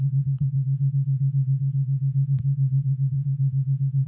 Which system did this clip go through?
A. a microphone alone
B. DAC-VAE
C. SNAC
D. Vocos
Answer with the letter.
C